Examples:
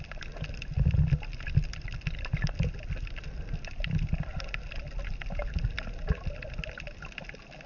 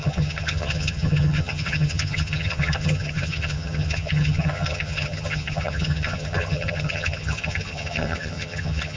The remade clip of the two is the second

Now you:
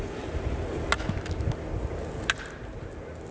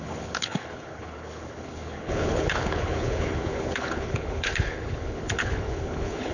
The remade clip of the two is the second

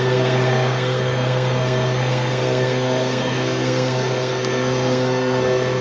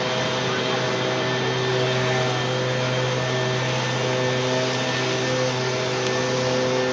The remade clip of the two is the first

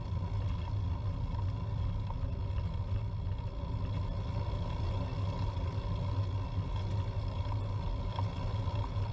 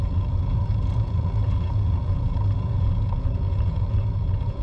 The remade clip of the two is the second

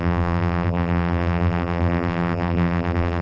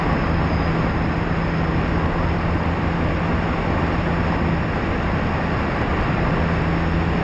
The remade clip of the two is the first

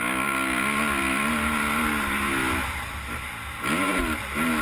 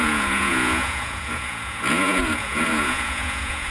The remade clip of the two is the second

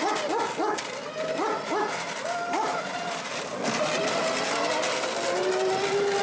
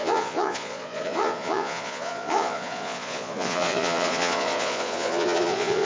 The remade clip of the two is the second